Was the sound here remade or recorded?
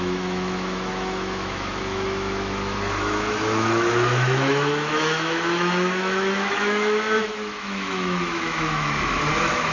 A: remade